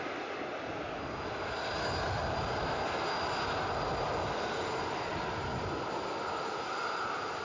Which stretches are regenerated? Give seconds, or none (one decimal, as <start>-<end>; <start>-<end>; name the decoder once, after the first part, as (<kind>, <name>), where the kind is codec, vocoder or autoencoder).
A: none